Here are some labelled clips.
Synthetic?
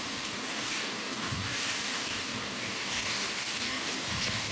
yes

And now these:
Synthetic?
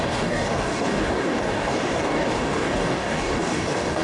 yes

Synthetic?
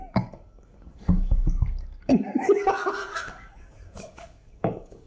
yes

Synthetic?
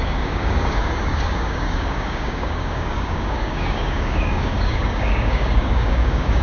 yes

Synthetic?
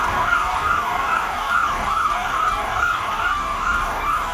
yes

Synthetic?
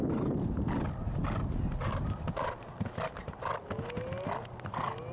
no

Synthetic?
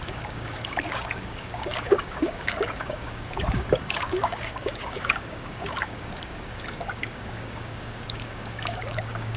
yes